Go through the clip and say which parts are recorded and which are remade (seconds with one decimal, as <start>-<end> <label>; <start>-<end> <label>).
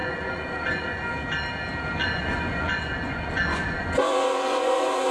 0.0-1.0 remade; 1.0-2.0 recorded; 2.0-5.1 remade